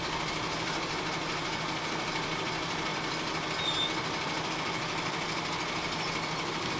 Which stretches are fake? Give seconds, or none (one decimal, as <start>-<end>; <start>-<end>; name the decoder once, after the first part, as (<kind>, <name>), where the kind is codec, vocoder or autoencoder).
none